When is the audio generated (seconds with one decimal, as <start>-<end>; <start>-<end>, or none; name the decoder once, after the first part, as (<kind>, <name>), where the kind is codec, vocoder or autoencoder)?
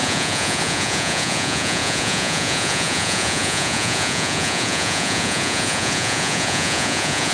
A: 0.0-7.3 (vocoder, Vocos)